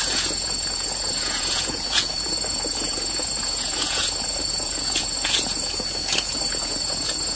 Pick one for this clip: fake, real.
fake